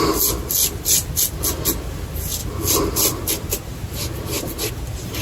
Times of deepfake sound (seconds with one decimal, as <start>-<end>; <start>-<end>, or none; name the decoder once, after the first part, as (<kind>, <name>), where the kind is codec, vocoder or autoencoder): none